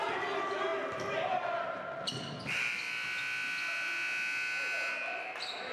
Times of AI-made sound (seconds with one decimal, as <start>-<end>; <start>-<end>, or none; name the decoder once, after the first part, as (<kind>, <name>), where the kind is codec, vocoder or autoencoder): none